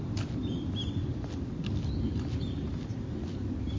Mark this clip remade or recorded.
recorded